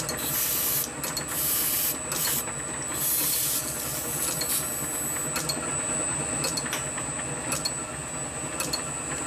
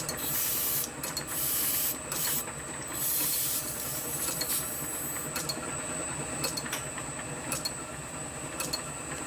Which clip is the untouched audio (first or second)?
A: first